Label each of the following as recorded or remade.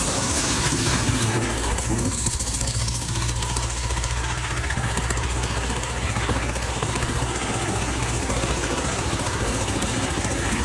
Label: remade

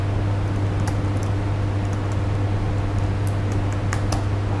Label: recorded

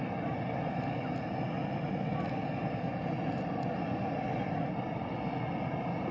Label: recorded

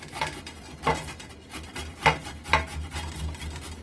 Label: recorded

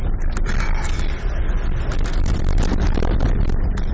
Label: recorded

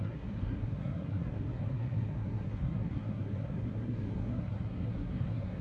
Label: remade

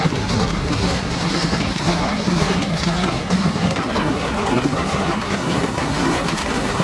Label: remade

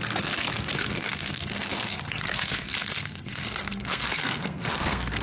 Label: remade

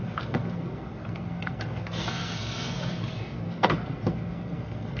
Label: remade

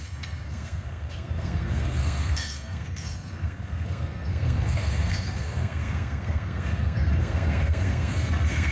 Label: remade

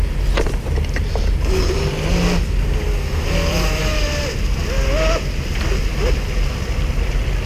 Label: recorded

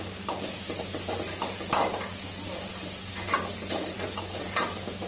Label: recorded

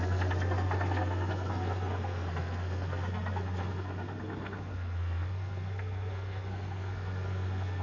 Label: remade